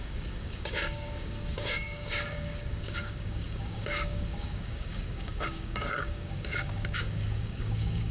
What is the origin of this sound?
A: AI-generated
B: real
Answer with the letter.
A